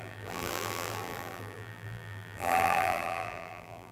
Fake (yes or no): yes